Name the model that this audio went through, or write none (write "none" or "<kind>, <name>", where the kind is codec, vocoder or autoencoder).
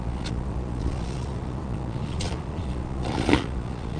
vocoder, Vocos